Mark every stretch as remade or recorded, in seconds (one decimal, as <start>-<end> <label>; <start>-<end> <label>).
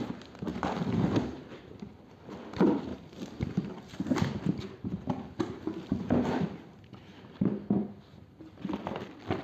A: 0.0-2.9 recorded; 2.9-4.0 remade; 4.0-9.4 recorded